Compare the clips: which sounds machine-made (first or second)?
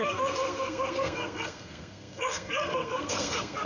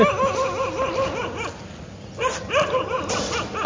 first